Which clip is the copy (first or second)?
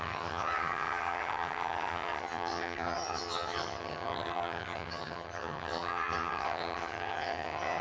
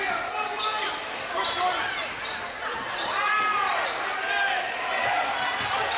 first